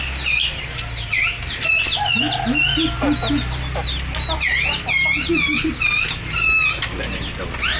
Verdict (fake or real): real